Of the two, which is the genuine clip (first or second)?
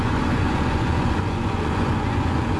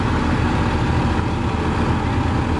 second